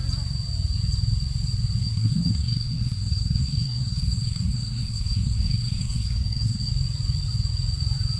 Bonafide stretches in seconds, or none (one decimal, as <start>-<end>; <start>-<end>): 0.0-1.8; 6.7-8.2